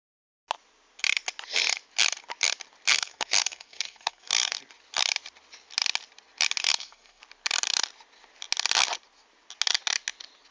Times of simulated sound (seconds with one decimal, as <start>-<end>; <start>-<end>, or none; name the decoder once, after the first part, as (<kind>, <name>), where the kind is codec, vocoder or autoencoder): 2.9-4.6 (codec, SNAC); 6.6-7.2

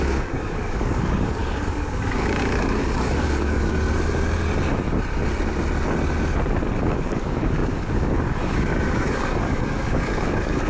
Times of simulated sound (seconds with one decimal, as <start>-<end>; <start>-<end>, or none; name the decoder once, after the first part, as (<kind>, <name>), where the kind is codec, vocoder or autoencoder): 0.0-3.7 (codec, DAC); 6.8-10.7